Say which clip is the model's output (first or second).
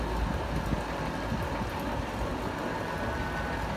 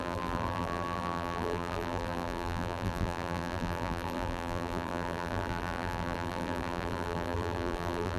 second